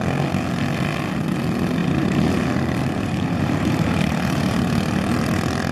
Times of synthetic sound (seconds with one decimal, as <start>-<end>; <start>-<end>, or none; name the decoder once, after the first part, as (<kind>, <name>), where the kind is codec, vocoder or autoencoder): 1.8-4.6 (vocoder, BigVGAN v2)